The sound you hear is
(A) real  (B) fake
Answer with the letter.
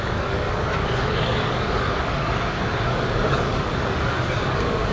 B